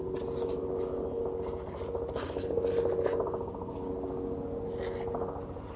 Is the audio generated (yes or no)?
no